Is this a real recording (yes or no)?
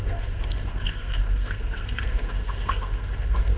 no